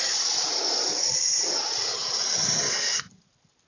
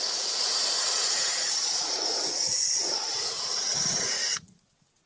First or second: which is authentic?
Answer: first